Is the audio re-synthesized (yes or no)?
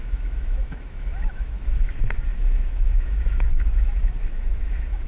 yes